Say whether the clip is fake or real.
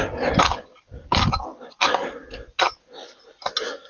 real